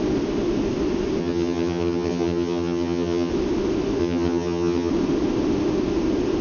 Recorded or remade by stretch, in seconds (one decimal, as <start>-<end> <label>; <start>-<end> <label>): 0.0-1.2 recorded; 1.2-3.3 remade; 3.3-4.0 recorded; 4.0-4.9 remade; 4.9-6.4 recorded